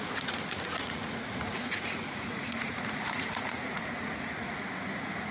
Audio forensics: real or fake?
fake